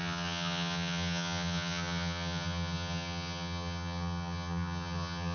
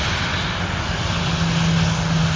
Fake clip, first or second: first